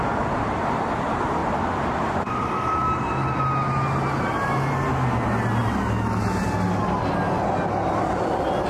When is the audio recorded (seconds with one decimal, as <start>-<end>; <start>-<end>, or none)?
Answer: 0.0-1.4; 3.4-8.7